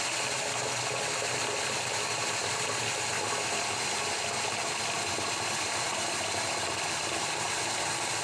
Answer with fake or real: real